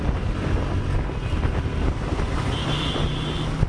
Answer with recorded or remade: recorded